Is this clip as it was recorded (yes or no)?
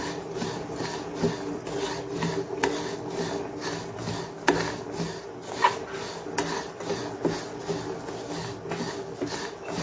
yes